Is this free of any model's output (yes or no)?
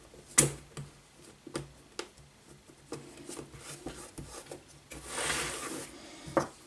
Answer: yes